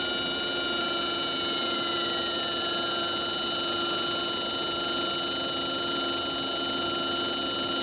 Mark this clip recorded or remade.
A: recorded